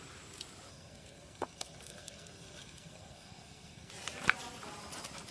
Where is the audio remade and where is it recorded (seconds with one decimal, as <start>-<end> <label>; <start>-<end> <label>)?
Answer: 0.0-0.7 recorded; 0.7-3.9 remade; 3.9-5.3 recorded